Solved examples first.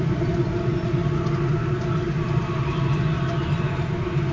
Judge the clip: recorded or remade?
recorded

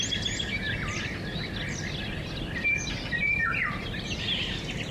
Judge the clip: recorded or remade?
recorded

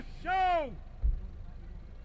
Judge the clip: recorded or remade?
recorded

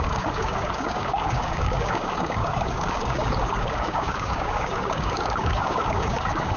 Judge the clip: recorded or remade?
remade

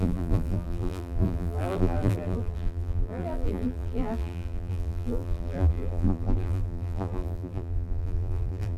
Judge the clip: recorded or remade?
remade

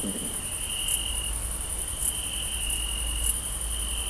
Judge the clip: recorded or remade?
recorded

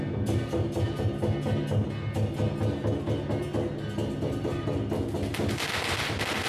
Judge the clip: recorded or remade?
recorded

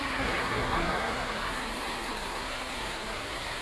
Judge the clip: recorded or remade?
remade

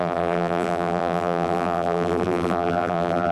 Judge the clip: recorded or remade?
remade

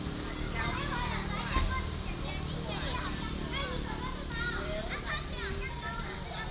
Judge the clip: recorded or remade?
recorded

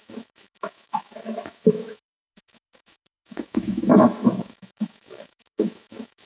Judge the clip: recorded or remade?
remade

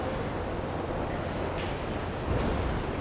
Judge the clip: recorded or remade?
recorded